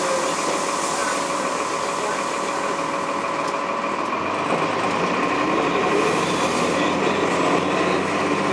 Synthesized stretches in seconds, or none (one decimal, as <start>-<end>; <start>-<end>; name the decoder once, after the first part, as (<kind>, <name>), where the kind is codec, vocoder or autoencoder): 1.0-1.7 (vocoder, BigVGAN v2)